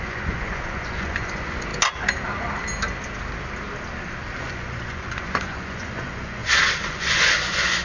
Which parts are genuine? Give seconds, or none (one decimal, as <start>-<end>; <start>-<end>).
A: 1.7-4.4; 6.4-6.9